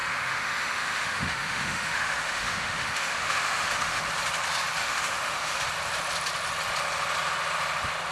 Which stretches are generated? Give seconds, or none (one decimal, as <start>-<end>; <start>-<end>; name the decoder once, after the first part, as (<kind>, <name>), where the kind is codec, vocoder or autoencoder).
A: 0.0-4.0 (autoencoder, DAC-VAE); 4.8-5.6